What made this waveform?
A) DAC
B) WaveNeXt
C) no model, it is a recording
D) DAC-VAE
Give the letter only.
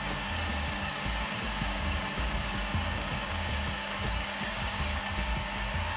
A